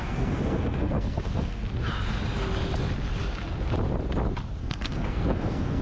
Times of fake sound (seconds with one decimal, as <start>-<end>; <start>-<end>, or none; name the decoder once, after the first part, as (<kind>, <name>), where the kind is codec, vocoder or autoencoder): 0.0-1.6 (codec, SNAC); 4.6-5.8